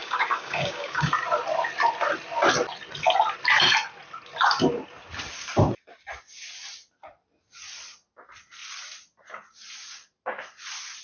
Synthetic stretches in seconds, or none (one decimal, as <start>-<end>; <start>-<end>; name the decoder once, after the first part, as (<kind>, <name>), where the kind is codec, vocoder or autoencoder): 0.0-1.1 (codec, DAC)